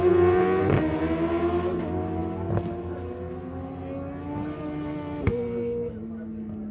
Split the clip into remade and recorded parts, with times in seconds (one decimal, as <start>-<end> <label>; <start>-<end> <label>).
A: 0.0-6.7 recorded